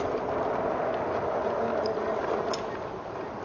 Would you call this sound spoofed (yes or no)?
no